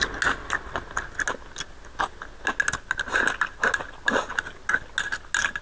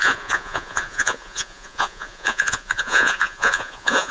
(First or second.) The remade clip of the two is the second